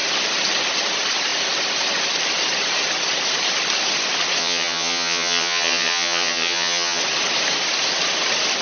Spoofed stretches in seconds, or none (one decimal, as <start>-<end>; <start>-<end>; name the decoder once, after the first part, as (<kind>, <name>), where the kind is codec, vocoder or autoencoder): 4.4-7.0 (vocoder, HiFi-GAN)